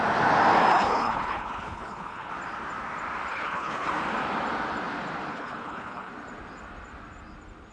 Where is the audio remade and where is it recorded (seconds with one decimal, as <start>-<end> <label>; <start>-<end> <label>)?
0.0-0.7 recorded; 0.7-2.3 remade; 2.3-3.3 recorded; 3.3-3.9 remade; 3.9-5.3 recorded; 5.3-6.1 remade; 6.1-7.7 recorded